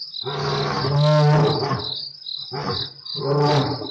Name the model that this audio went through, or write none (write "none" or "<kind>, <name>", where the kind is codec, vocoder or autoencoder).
none